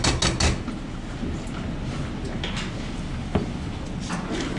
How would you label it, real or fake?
real